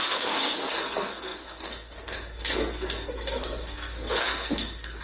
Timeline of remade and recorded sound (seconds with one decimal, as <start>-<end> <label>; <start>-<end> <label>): 0.0-5.0 remade